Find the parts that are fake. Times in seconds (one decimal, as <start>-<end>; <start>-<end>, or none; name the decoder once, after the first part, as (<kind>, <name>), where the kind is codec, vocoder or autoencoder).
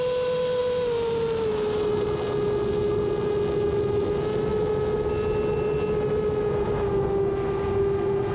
none